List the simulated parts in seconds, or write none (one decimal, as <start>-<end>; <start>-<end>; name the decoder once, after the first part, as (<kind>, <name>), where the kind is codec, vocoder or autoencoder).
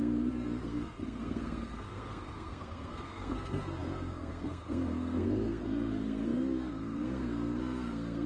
0.0-8.3 (codec, SNAC)